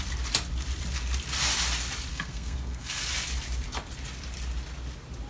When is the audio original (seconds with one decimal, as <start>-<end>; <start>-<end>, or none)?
0.0-2.1; 3.0-5.3